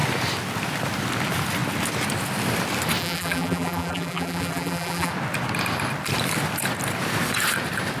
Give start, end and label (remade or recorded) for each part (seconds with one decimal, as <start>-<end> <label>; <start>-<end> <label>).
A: 0.0-3.0 recorded; 3.0-5.1 remade; 5.1-8.0 recorded